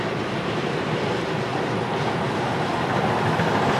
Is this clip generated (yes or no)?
no